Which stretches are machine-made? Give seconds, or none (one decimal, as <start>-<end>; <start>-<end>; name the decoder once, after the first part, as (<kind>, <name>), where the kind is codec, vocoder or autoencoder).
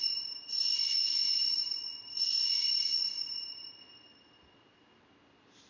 none